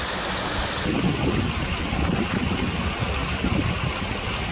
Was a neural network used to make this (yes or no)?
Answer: no